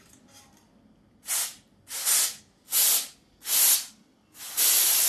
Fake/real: real